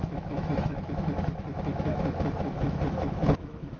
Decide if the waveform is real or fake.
fake